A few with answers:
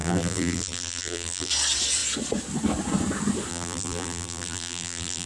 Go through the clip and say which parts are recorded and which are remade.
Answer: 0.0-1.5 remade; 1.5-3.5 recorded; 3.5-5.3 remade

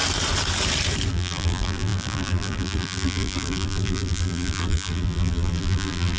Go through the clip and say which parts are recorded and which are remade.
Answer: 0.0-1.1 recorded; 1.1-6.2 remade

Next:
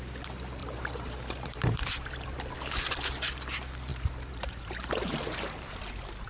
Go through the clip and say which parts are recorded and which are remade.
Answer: 0.0-0.6 recorded; 0.6-1.8 remade; 1.8-3.9 recorded; 3.9-5.8 remade; 5.8-6.3 recorded

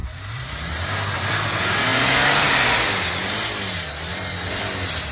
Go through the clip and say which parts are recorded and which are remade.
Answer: 0.0-0.8 remade; 0.8-5.1 recorded

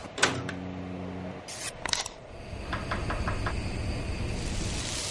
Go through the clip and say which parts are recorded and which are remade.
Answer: 0.0-5.1 recorded

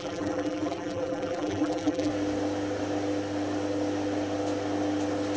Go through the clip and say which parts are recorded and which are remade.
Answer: 0.0-2.1 remade; 2.1-5.4 recorded